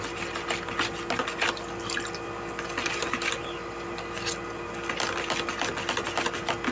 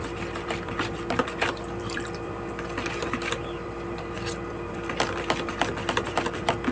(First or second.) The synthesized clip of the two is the second